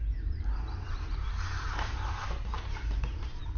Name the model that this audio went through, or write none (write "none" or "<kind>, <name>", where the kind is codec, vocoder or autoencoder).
vocoder, BigVGAN v2